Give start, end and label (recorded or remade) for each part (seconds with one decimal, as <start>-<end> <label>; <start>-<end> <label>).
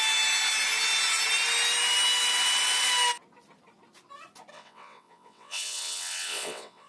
0.0-4.5 recorded; 4.5-6.9 remade